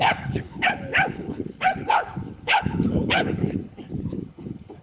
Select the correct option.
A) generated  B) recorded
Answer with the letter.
A